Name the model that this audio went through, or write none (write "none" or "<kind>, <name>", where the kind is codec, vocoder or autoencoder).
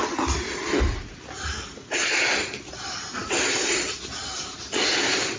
none